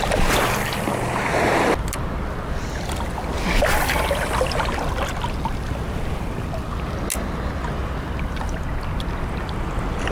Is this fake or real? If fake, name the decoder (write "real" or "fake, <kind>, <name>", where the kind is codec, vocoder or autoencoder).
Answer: real